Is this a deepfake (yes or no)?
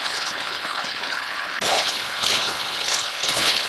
yes